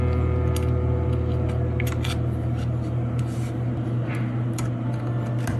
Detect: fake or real real